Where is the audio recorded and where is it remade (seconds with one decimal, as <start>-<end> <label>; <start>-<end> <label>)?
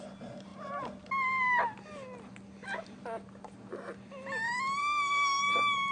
0.0-4.8 recorded; 4.8-5.4 remade; 5.4-5.9 recorded